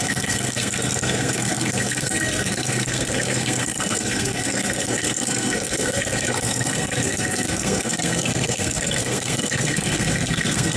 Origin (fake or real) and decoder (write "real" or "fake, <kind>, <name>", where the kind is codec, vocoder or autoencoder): fake, codec, SNAC